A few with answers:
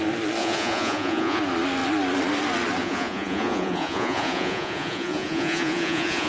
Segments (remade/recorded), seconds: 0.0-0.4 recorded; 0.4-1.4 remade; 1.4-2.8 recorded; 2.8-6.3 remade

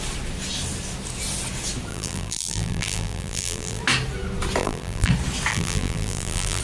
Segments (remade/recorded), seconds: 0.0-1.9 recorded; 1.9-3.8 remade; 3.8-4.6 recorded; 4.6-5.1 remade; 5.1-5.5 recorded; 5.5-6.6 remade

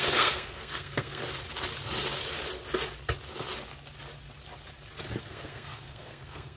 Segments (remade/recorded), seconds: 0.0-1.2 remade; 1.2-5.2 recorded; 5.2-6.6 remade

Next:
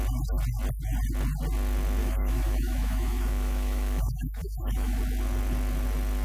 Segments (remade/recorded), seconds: 0.0-2.0 recorded; 2.0-5.0 remade; 5.0-6.2 recorded

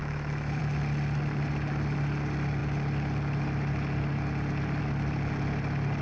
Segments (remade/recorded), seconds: 0.0-0.6 remade; 0.6-6.0 recorded